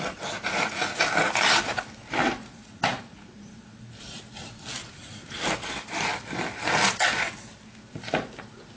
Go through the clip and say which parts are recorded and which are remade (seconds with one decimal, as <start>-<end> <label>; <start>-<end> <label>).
0.0-2.4 recorded; 2.4-3.6 remade; 3.6-4.8 recorded; 4.8-5.4 remade; 5.4-8.8 recorded